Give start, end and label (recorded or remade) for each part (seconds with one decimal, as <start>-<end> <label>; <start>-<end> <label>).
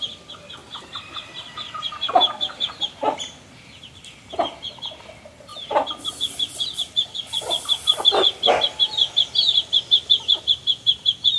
0.0-0.6 recorded; 0.6-3.5 remade; 3.5-11.4 recorded